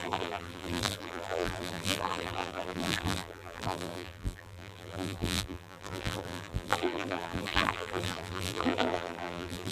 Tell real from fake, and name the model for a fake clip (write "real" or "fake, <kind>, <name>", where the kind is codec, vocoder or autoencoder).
fake, vocoder, BigVGAN v2